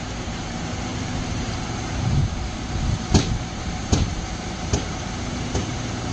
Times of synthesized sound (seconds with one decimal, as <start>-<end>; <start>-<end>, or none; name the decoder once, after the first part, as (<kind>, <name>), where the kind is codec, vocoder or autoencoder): 0.0-2.2 (vocoder, BigVGAN v2); 3.4-6.1